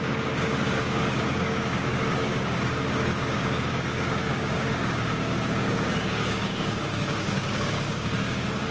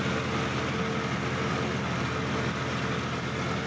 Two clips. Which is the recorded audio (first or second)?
second